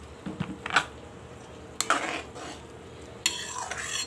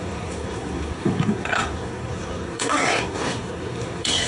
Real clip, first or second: first